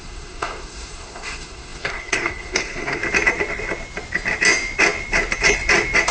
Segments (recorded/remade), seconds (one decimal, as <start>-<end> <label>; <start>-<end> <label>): 0.0-3.0 remade; 3.0-6.1 recorded